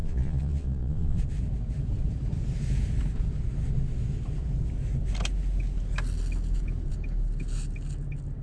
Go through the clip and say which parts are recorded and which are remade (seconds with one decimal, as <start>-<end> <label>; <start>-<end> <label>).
0.0-1.2 remade; 1.2-8.4 recorded